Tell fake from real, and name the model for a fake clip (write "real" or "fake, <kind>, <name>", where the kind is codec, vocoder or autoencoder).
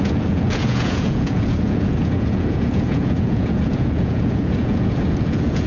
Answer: fake, vocoder, Vocos